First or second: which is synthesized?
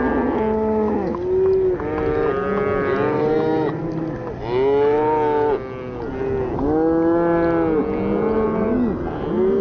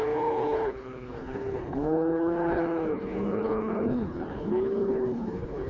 second